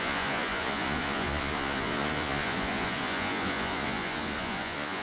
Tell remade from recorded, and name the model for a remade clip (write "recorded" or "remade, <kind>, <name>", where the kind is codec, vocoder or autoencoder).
remade, vocoder, Vocos